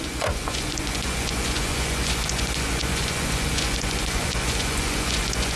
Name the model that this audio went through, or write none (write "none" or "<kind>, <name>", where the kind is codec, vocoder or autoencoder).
vocoder, Vocos